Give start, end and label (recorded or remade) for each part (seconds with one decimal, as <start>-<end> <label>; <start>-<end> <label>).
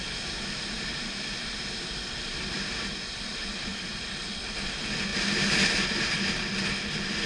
0.0-7.3 recorded